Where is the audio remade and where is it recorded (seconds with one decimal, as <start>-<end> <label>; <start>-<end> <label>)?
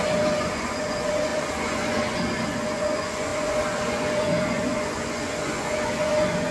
0.0-6.5 remade